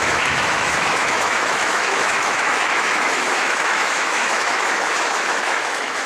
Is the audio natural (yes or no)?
no